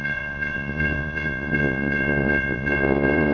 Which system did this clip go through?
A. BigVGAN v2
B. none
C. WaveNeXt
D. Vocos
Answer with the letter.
D